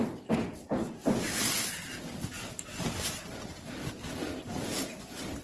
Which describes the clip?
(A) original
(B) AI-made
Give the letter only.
A